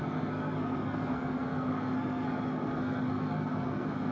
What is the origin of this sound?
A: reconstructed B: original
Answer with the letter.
A